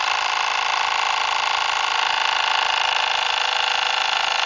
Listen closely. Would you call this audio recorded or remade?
recorded